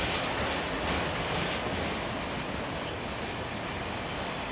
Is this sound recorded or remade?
recorded